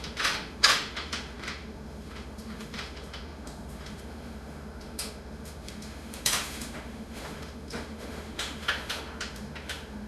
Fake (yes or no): yes